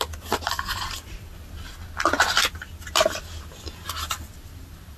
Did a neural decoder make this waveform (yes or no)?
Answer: no